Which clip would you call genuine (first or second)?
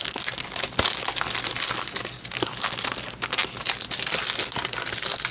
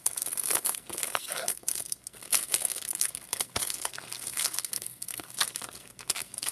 first